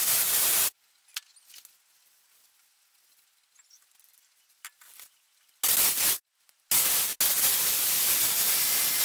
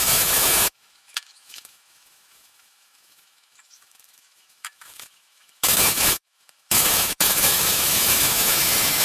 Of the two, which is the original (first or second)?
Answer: first